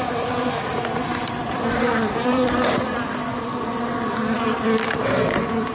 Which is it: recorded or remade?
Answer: recorded